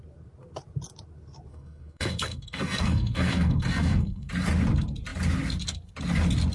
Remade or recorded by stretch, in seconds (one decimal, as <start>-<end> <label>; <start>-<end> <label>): 0.0-1.5 recorded; 1.5-4.3 remade; 4.3-6.5 recorded

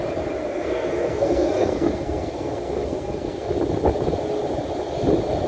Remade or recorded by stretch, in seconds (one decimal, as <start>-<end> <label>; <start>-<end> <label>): 0.0-0.4 recorded; 0.4-3.5 remade; 3.5-5.5 recorded